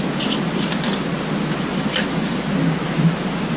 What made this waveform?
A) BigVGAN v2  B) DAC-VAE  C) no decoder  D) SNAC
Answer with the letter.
C